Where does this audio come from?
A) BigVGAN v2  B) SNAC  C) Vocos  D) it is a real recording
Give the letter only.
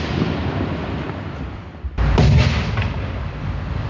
A